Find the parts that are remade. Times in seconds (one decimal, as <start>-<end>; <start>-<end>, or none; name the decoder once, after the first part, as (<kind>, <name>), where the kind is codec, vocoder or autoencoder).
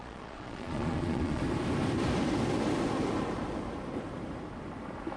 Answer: 0.0-1.4 (vocoder, Vocos)